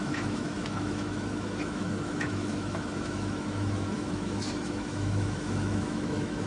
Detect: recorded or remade remade